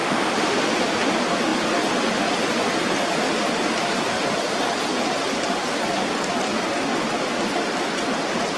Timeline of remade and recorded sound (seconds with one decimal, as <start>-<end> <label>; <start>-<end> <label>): 0.0-0.6 remade; 0.6-8.6 recorded